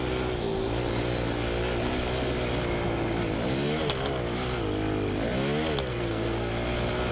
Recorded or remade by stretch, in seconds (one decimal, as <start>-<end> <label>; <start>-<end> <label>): 0.0-5.9 recorded; 5.9-6.5 remade; 6.5-7.1 recorded